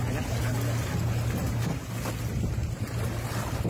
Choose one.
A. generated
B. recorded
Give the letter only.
B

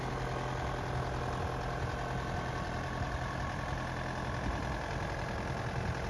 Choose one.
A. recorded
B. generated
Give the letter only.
A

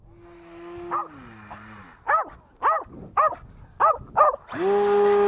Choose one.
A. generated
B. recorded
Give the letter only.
B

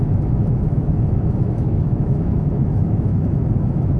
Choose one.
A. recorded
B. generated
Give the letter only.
B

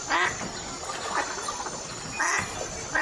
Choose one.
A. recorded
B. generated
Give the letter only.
A